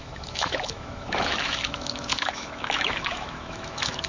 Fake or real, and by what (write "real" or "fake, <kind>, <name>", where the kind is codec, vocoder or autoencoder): fake, autoencoder, DAC-VAE